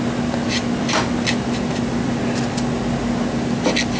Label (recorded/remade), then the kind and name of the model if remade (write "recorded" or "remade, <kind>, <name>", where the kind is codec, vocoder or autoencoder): recorded